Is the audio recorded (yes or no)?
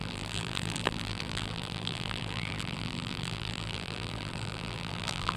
no